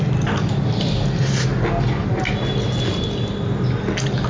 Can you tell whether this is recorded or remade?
recorded